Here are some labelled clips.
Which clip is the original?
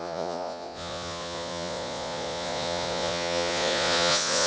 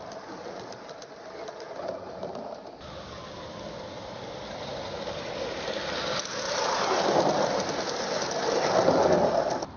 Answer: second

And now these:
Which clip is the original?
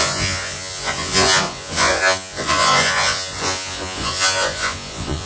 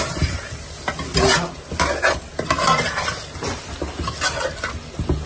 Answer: second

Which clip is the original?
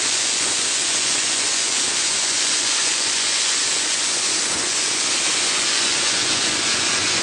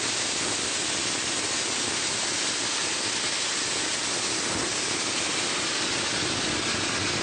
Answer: second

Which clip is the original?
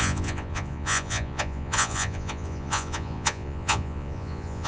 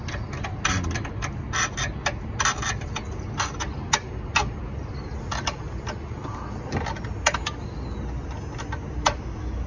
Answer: second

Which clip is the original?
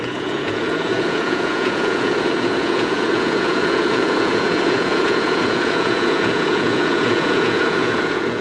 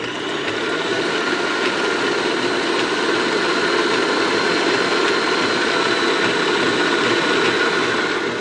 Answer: second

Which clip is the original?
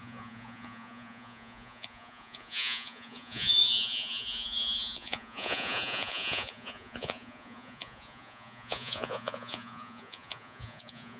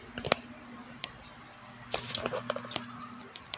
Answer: second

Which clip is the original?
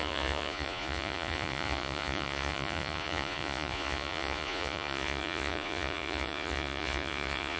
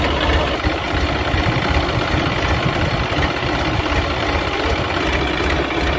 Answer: second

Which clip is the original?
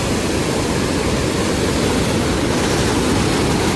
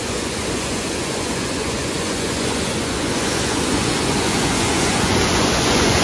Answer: first